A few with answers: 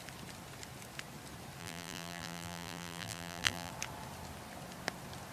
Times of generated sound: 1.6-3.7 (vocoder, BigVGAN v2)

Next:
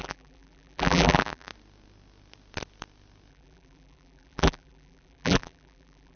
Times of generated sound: 0.0-1.5 (vocoder, BigVGAN v2); 3.3-6.2

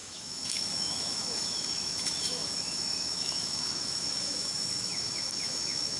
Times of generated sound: 0.0-6.0 (autoencoder, DAC-VAE)

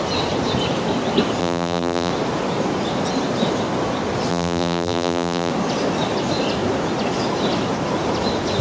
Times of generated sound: 1.4-2.1 (vocoder, BigVGAN v2); 4.3-5.5

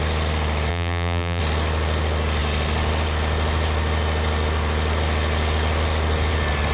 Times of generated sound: 0.7-1.4 (vocoder, BigVGAN v2)

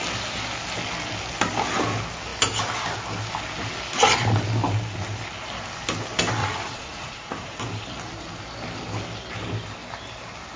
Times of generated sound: 6.4-7.6 (vocoder, Vocos)

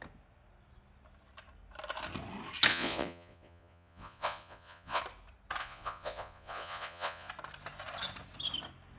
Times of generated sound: 2.7-5.0 (vocoder, Vocos); 5.6-7.3

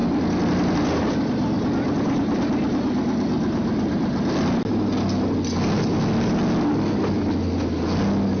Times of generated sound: 0.0-4.9 (vocoder, BigVGAN v2)